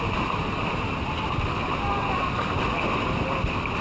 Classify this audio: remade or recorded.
recorded